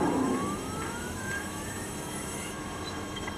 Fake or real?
fake